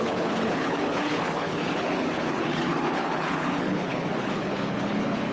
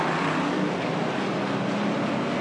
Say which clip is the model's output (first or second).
first